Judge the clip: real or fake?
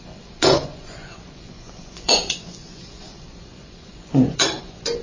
fake